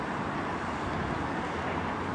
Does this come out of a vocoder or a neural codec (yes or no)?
no